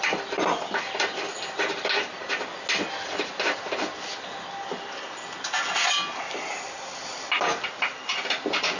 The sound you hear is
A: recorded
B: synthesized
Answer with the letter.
A